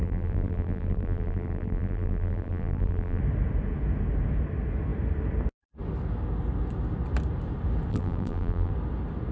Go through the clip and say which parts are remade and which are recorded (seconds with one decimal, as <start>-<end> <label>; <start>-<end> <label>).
0.0-3.2 remade; 3.2-7.9 recorded; 7.9-8.7 remade; 8.7-9.3 recorded